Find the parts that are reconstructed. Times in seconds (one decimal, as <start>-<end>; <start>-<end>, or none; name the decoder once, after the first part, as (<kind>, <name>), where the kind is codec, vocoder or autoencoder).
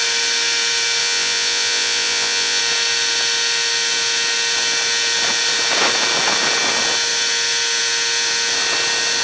1.0-2.6 (vocoder, Vocos)